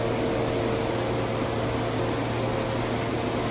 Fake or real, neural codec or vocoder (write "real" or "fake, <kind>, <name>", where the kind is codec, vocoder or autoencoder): real